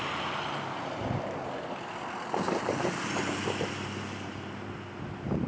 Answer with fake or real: real